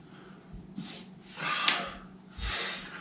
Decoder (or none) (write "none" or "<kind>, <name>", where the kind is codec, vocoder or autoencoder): none